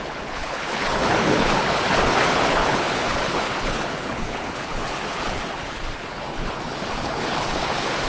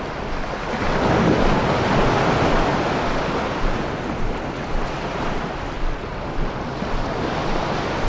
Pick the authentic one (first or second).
second